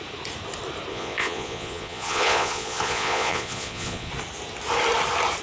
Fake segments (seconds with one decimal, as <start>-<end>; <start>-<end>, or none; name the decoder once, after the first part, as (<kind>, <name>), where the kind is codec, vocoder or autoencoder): 0.9-4.1 (vocoder, Vocos)